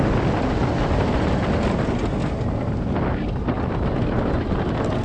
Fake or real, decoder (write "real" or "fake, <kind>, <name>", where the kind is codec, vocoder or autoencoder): real